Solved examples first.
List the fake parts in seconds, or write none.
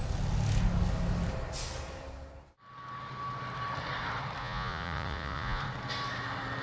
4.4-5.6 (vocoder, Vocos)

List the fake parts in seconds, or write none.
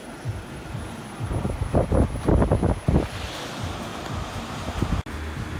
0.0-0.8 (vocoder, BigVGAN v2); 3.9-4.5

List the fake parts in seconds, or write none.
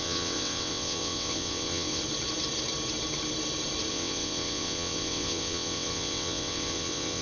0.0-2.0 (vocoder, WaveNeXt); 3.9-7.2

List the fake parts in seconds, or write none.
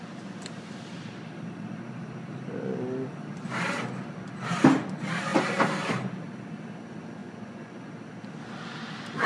7.2-7.9 (vocoder, Vocos)